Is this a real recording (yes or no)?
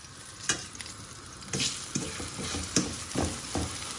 yes